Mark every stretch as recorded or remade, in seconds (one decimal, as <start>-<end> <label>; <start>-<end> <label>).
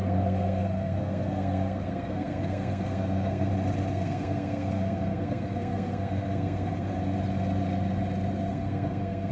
0.0-3.5 remade; 3.5-3.9 recorded; 3.9-7.0 remade; 7.0-8.5 recorded; 8.5-9.3 remade